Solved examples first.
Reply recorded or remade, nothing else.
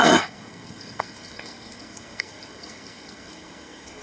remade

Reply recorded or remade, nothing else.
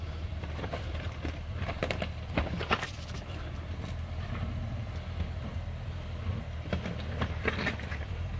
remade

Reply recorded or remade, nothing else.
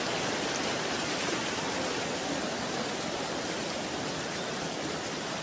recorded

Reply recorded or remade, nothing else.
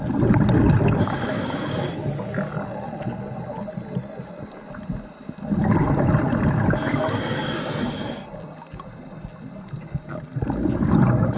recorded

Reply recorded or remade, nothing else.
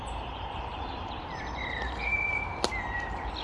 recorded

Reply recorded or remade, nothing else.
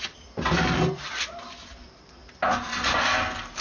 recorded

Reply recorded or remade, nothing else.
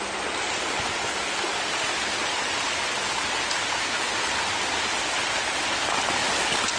recorded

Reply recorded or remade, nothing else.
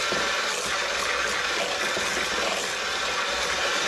recorded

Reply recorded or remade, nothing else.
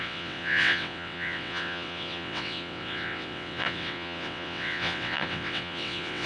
remade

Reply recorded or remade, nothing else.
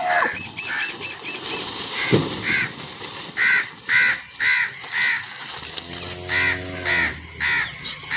recorded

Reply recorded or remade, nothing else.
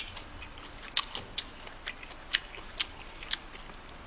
recorded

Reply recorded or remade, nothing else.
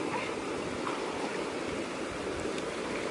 recorded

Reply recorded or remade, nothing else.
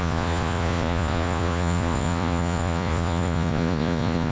remade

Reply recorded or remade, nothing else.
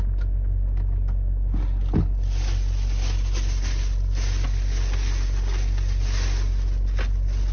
recorded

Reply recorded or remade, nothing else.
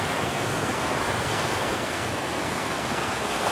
remade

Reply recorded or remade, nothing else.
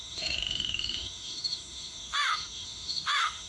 remade